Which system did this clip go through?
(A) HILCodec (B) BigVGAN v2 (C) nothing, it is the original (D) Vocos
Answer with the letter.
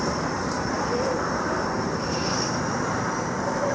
B